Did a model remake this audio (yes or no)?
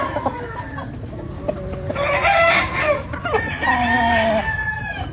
no